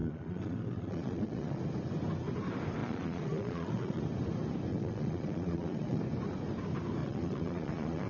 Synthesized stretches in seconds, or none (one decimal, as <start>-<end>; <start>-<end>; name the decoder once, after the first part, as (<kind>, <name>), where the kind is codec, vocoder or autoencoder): 0.0-1.6 (vocoder, Vocos); 2.8-4.0; 4.7-6.0; 7.0-8.1